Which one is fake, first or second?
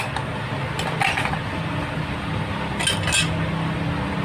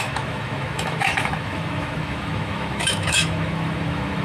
second